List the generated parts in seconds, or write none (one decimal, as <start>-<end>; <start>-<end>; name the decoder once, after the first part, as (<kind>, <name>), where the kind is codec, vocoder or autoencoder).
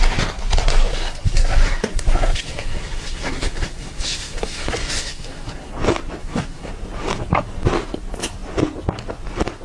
0.9-5.7 (codec, SNAC); 6.2-6.7